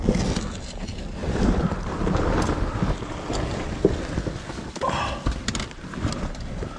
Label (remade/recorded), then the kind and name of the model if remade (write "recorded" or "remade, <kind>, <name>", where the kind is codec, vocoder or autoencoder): recorded